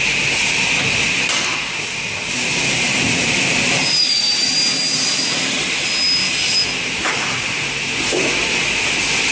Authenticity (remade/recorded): recorded